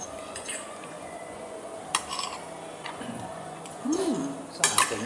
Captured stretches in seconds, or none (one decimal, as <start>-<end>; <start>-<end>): 1.7-2.8; 4.0-5.1